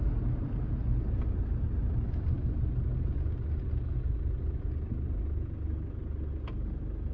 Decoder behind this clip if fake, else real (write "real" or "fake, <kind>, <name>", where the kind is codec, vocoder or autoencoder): real